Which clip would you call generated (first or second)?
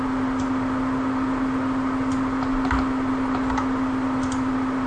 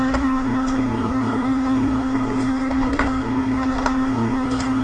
second